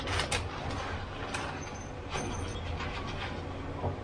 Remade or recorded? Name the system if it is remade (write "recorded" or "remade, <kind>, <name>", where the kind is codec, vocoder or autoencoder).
recorded